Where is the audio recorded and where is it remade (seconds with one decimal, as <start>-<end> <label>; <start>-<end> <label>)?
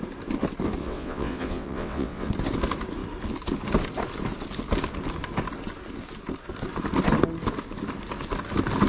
0.0-0.8 recorded; 0.8-2.3 remade; 2.3-8.9 recorded